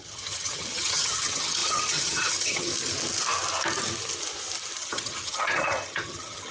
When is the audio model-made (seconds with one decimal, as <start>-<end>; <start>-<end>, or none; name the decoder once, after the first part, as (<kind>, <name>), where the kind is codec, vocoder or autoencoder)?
0.0-2.7 (vocoder, HiFi-GAN); 4.8-6.5